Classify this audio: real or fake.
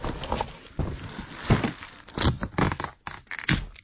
real